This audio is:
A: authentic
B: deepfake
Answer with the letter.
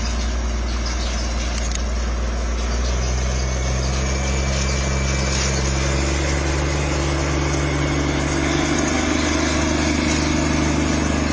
A